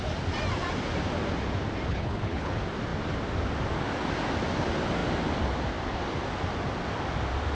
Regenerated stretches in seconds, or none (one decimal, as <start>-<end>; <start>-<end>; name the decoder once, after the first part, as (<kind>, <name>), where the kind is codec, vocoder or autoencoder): 1.9-2.5 (codec, HILCodec)